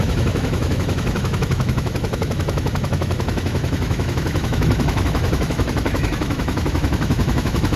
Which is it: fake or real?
fake